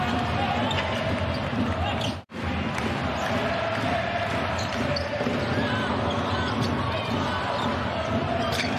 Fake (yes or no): no